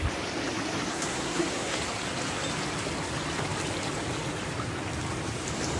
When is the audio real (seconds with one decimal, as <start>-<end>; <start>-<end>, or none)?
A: 0.0-0.9; 1.8-5.8